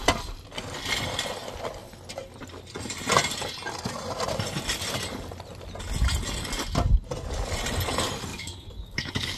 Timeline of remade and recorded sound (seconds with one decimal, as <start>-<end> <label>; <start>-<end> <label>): 0.0-8.3 recorded; 8.3-9.4 remade